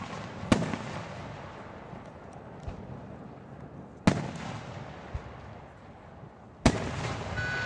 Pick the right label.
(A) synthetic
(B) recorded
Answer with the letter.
B